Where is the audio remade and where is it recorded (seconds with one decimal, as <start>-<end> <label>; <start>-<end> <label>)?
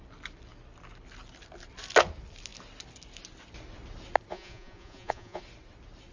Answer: 0.0-4.3 recorded; 4.3-5.4 remade; 5.4-6.1 recorded